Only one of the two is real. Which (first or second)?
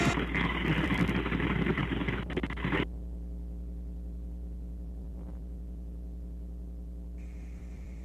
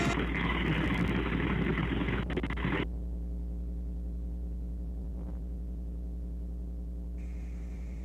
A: second